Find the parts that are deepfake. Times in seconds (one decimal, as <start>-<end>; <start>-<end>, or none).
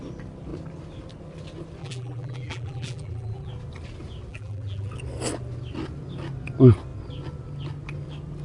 1.8-3.5; 4.3-4.9